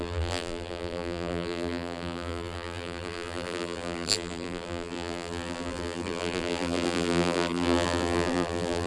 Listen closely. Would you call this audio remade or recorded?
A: remade